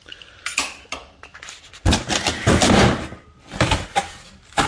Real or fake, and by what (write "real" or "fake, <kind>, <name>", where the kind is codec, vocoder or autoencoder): real